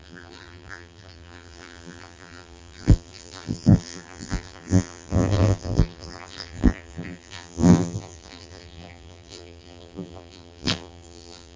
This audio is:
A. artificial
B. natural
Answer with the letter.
A